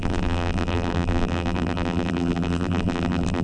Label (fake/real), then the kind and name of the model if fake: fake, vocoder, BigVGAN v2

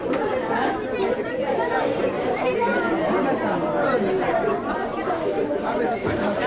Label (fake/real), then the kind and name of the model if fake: fake, vocoder, BigVGAN v2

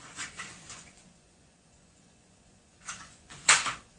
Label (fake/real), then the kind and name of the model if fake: fake, vocoder, Vocos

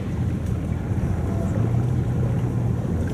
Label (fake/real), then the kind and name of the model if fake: real